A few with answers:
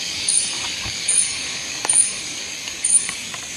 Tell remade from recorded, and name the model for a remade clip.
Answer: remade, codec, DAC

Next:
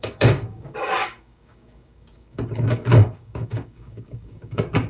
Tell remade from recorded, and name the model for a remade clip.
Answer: remade, codec, DAC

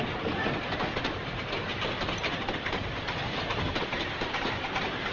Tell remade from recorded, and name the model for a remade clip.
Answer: recorded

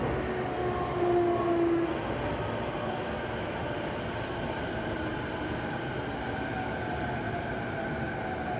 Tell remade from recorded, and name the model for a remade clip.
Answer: recorded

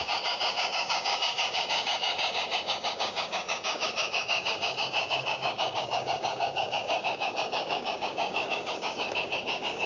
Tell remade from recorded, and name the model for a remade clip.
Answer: remade, codec, DAC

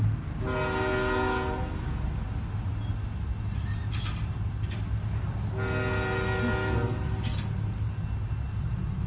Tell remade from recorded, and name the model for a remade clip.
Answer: recorded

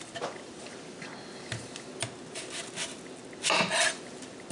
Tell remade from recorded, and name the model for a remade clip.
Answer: recorded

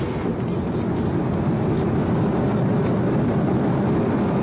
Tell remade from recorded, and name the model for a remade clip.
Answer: recorded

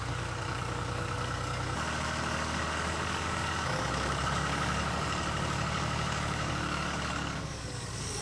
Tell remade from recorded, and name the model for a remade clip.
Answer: remade, codec, DAC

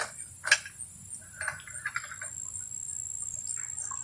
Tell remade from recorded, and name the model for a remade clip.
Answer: recorded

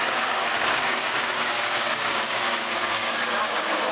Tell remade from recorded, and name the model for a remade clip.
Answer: remade, codec, DAC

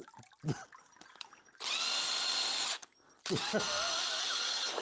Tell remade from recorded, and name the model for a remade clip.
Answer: recorded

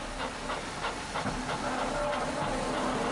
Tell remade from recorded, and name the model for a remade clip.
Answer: recorded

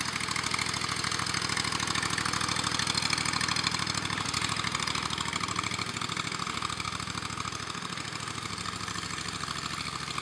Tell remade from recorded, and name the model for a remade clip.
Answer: recorded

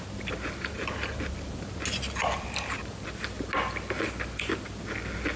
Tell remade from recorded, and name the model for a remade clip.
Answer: recorded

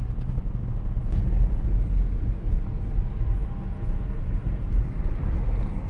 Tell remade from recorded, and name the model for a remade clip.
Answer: recorded